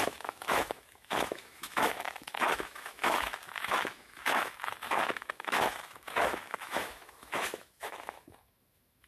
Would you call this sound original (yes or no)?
no